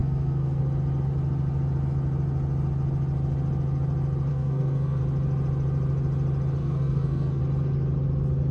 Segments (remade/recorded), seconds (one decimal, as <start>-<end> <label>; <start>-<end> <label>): 0.0-0.6 remade; 0.6-4.3 recorded; 4.3-5.0 remade; 5.0-6.6 recorded; 6.6-7.4 remade; 7.4-8.5 recorded

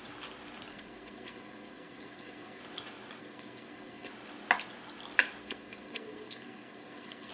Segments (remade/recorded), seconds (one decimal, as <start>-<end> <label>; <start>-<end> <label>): 0.0-0.7 recorded; 0.7-2.6 remade; 2.6-3.2 recorded; 3.2-4.1 remade; 4.1-5.4 recorded; 5.4-7.3 remade

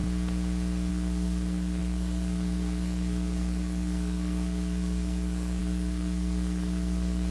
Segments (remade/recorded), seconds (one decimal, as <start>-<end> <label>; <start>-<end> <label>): 0.0-0.9 recorded; 0.9-7.3 remade

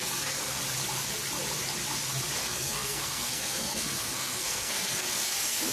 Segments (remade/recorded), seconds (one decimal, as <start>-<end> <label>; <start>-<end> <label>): 0.0-0.6 remade; 0.6-2.4 recorded; 2.4-5.7 remade

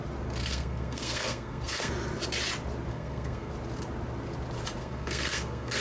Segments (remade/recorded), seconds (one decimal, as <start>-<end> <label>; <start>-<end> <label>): 0.0-0.4 recorded; 0.4-1.9 remade; 1.9-2.9 recorded; 2.9-3.5 remade; 3.5-4.8 recorded; 4.8-5.8 remade

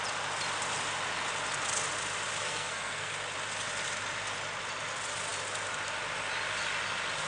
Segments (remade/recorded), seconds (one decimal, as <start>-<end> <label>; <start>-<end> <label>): 0.0-2.4 recorded; 2.4-3.1 remade; 3.1-7.3 recorded

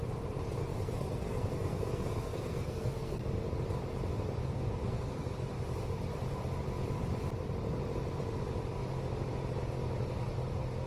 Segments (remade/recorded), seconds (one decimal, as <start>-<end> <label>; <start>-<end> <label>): 0.0-0.6 recorded; 0.6-3.3 remade; 3.3-4.4 recorded; 4.4-5.3 remade; 5.3-10.9 recorded

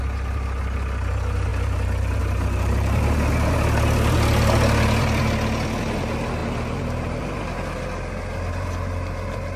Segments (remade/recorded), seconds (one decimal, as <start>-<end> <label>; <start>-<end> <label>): 0.0-9.6 recorded